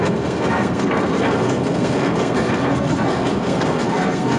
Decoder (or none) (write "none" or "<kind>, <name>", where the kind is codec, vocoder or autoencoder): codec, SNAC